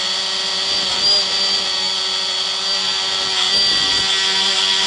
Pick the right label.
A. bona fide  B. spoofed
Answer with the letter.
A